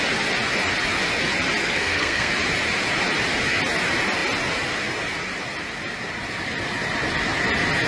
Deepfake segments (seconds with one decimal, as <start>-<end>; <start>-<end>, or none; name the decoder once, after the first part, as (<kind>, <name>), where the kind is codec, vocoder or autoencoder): 1.6-2.3 (codec, SNAC)